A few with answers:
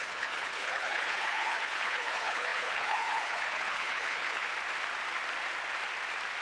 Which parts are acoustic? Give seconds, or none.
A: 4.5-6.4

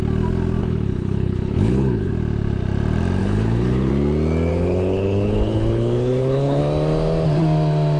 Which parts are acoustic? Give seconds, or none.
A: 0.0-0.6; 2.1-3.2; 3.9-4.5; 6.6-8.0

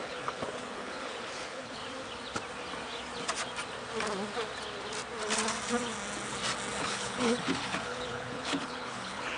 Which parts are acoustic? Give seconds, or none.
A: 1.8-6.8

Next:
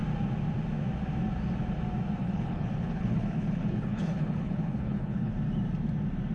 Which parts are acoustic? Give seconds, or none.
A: 0.0-2.2; 5.3-6.3

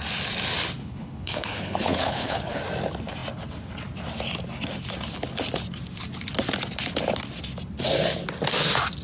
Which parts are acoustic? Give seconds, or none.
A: 0.0-0.8; 2.6-9.0